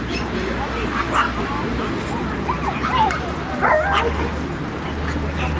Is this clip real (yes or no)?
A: yes